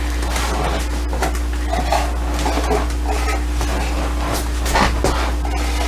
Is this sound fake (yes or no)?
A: no